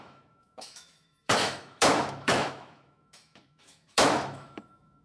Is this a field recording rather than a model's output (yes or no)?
no